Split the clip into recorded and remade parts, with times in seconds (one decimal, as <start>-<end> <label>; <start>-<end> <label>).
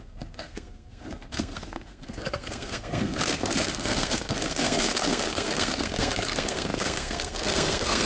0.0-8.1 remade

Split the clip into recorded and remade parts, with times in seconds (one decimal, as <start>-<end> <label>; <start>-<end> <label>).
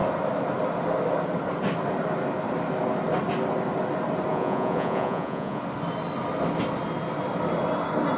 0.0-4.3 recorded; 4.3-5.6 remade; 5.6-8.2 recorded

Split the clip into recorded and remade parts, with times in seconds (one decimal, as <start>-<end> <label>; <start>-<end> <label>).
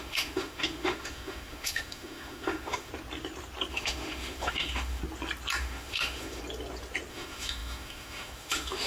0.0-2.9 remade; 2.9-3.7 recorded; 3.7-5.0 remade; 5.0-5.6 recorded; 5.6-6.4 remade; 6.4-7.1 recorded; 7.1-8.9 remade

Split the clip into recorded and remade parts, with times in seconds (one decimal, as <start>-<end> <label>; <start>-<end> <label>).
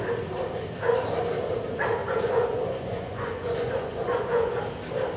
0.0-2.0 recorded; 2.0-4.6 remade; 4.6-5.2 recorded